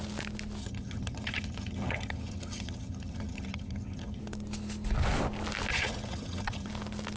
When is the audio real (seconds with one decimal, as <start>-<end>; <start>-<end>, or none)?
0.0-0.6; 4.2-5.7; 6.7-7.2